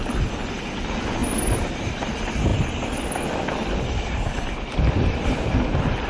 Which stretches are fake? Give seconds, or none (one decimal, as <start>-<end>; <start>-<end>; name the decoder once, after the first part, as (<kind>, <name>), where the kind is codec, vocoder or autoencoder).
2.5-5.3 (vocoder, BigVGAN v2)